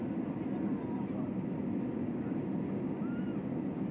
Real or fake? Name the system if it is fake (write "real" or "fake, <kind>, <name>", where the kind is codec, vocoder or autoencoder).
real